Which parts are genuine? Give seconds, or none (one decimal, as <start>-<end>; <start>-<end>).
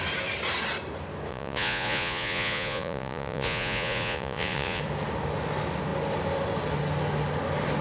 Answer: 0.0-1.3; 4.8-7.8